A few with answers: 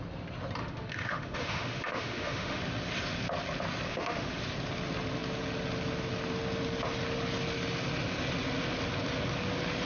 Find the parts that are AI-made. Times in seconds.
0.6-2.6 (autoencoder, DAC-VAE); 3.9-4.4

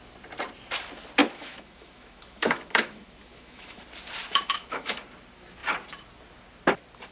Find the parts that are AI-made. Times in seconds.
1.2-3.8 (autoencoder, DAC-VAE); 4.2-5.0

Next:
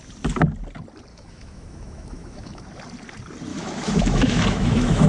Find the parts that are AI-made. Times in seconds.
1.1-2.6 (autoencoder, DAC-VAE); 3.5-5.1

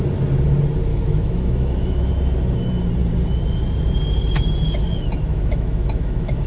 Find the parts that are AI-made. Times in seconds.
0.9-2.1 (autoencoder, DAC-VAE); 5.3-6.5

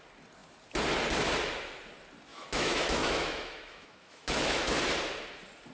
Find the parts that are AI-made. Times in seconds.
2.3-4.8 (autoencoder, DAC-VAE)

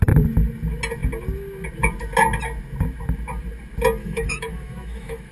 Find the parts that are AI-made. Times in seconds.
4.0-5.3 (autoencoder, DAC-VAE)